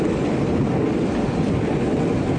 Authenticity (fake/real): real